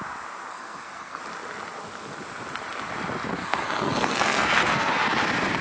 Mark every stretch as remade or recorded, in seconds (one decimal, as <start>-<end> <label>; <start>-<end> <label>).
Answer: 0.0-0.5 recorded; 0.5-1.2 remade; 1.2-3.4 recorded; 3.4-4.9 remade; 4.9-5.6 recorded